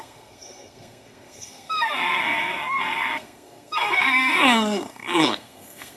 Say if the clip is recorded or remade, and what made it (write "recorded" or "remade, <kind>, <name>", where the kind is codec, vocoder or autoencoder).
remade, codec, SNAC